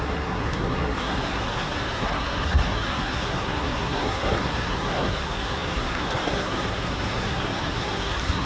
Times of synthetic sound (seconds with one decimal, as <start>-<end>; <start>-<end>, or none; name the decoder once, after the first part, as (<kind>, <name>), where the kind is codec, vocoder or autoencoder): 0.0-8.5 (codec, SNAC)